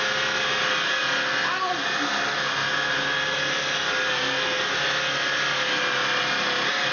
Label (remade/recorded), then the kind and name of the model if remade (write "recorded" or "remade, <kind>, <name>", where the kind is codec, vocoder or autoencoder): recorded